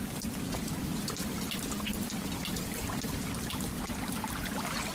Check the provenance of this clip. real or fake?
real